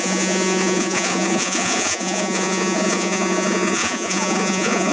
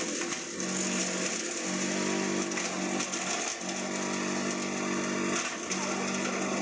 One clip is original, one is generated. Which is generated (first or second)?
first